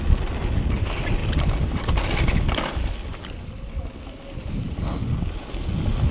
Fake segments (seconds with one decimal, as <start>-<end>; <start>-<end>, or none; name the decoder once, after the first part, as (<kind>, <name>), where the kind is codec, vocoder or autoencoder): none